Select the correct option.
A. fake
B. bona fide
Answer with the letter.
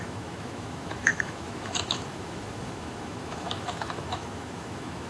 A